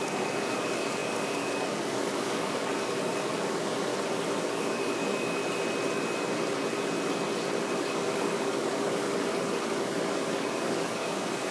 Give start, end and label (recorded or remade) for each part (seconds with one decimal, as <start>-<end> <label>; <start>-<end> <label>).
0.0-3.9 remade; 3.9-4.4 recorded; 4.4-5.4 remade; 5.4-7.6 recorded; 7.6-11.5 remade